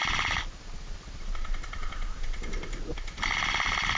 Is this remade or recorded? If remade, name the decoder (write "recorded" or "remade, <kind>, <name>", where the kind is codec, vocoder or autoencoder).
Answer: recorded